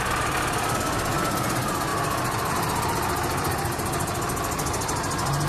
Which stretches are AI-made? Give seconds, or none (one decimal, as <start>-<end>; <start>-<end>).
none